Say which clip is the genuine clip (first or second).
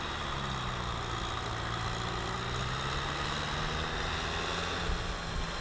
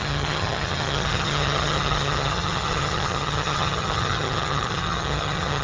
first